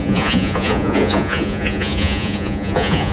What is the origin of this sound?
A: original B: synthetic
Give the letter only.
B